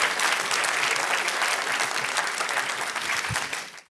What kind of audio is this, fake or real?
real